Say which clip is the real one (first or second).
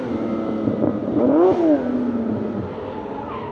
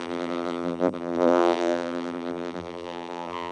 first